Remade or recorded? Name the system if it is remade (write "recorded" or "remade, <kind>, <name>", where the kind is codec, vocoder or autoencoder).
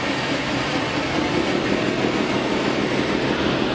recorded